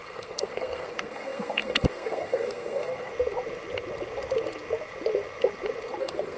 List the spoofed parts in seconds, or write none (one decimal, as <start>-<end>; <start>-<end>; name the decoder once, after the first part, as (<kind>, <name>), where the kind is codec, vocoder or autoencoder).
0.0-3.1 (codec, SNAC); 6.0-6.4